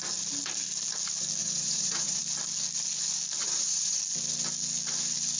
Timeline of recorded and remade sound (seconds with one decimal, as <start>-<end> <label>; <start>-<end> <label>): 0.0-1.4 recorded; 1.4-2.2 remade; 2.2-3.4 recorded; 3.4-4.0 remade; 4.0-5.4 recorded